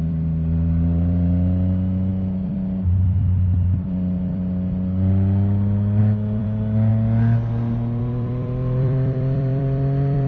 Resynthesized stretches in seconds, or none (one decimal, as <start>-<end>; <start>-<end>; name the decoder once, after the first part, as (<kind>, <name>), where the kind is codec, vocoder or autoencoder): 0.0-6.9 (vocoder, BigVGAN v2); 8.0-10.3